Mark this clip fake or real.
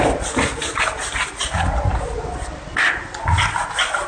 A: real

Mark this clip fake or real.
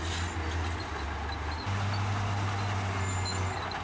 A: real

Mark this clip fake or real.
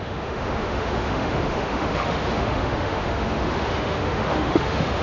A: fake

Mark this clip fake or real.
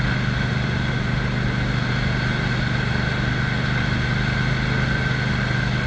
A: real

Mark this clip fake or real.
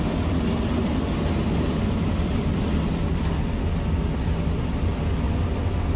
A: real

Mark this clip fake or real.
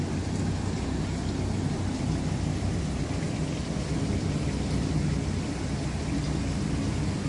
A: real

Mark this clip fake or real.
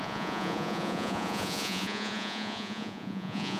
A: fake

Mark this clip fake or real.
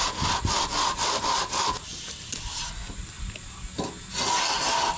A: real